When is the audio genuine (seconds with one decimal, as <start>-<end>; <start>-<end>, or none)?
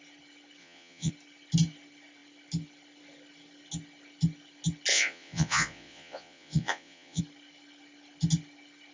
0.0-0.6; 1.1-4.9; 7.2-8.9